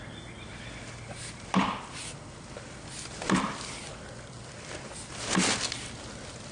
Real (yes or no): no